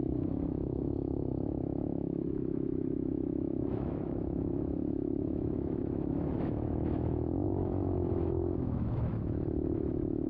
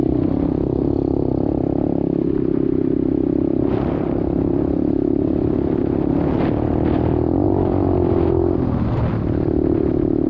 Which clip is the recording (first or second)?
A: second